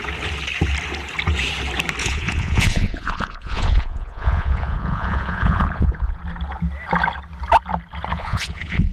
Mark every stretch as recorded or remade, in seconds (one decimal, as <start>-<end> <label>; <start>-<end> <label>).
0.0-2.0 recorded; 2.0-6.2 remade; 6.2-8.1 recorded; 8.1-8.9 remade